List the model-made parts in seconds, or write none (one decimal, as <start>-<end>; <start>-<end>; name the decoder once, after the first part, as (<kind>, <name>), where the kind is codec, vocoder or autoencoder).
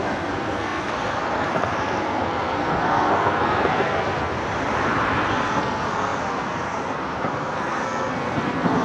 0.0-4.3 (codec, SNAC); 5.3-8.8